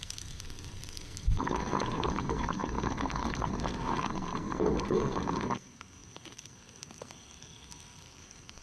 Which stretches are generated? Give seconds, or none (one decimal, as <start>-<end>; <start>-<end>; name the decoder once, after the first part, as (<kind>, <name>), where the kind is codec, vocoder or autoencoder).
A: 0.0-8.6 (codec, SNAC)